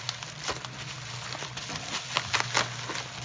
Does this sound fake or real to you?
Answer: real